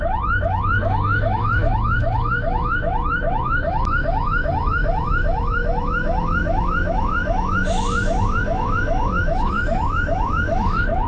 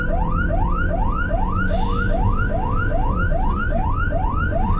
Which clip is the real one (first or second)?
second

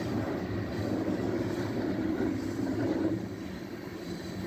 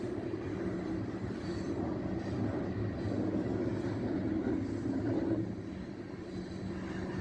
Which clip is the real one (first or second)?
second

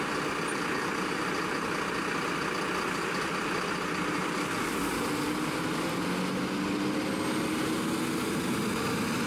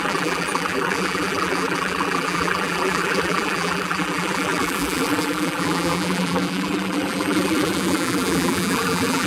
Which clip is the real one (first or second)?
first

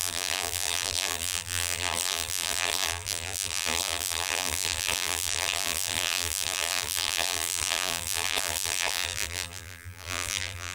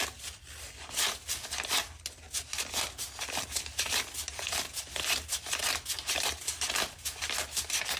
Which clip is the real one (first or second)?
second